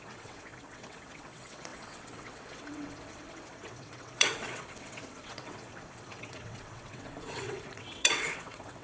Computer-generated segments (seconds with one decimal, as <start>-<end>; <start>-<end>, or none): 0.0-8.8